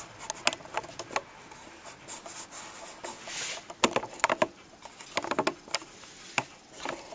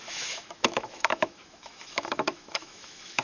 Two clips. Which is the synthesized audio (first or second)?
second